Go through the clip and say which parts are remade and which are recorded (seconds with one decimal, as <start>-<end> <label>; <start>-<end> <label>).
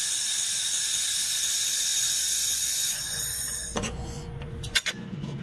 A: 0.0-1.9 recorded; 1.9-5.4 remade